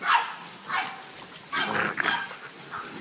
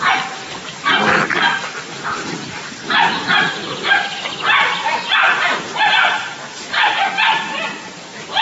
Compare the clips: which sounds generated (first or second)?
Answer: second